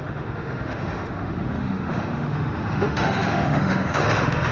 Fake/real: fake